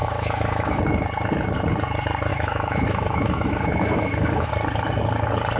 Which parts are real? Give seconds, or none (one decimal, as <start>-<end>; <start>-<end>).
0.8-2.3; 4.5-5.6